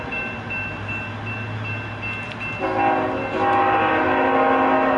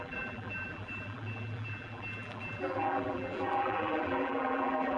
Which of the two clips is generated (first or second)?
second